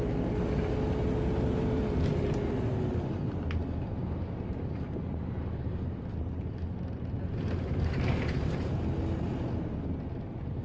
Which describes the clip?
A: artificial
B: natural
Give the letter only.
B